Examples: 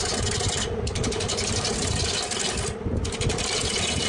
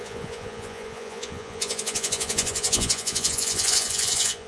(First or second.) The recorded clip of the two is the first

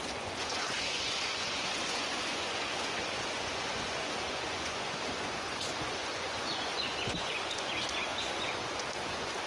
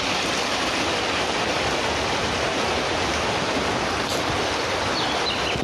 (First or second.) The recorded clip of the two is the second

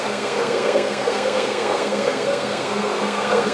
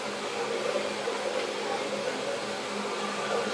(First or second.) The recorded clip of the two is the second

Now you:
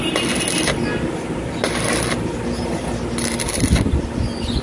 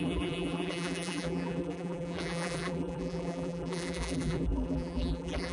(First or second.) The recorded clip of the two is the first